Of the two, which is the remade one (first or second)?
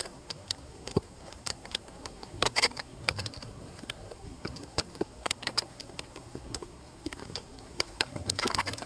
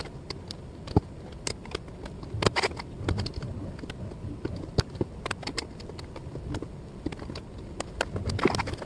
first